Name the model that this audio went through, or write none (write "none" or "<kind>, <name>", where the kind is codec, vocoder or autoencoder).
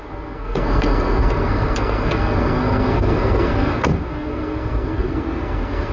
codec, SNAC